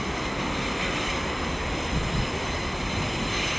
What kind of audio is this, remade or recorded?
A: recorded